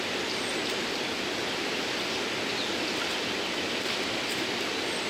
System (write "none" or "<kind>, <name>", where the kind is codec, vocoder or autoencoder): none